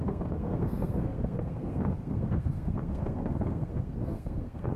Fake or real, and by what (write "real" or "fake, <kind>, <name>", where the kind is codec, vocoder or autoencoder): fake, codec, SNAC